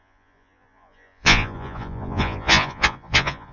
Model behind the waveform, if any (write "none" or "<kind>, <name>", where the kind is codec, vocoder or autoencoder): vocoder, Vocos